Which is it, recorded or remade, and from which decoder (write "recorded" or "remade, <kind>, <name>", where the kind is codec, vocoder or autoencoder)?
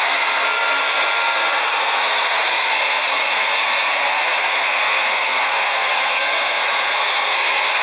remade, codec, SNAC